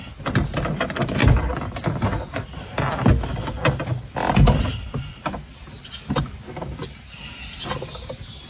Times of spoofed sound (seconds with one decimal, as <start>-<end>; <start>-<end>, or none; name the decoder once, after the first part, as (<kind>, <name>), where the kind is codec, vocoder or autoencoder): none